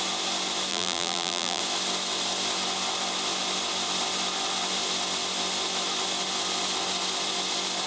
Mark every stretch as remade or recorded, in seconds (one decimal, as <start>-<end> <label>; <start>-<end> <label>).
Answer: 0.0-0.7 recorded; 0.7-1.6 remade; 1.6-7.9 recorded